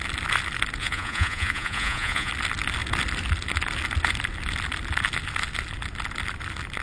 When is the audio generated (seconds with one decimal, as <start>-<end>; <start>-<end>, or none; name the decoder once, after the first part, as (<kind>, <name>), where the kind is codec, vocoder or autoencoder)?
0.8-2.3 (vocoder, Vocos)